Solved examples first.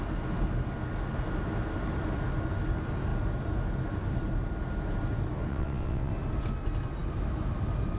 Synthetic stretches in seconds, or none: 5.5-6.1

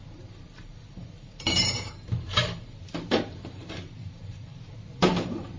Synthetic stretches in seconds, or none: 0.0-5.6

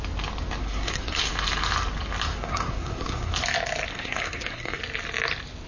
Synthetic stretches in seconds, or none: 0.6-1.2; 2.3-3.3; 3.9-4.8